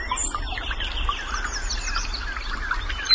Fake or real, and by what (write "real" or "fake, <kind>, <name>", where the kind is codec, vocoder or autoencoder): real